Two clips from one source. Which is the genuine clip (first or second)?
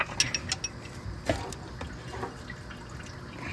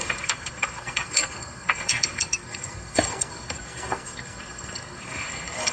first